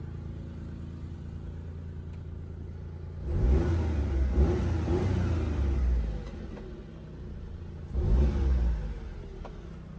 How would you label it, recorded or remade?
recorded